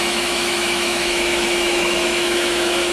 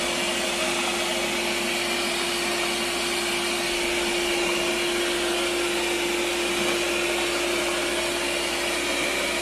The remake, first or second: first